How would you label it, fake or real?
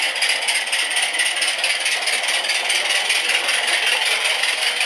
fake